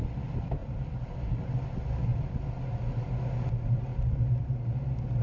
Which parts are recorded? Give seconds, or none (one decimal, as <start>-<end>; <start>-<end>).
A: 0.0-0.6; 1.5-5.2